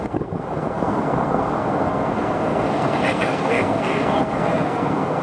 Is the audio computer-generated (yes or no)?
yes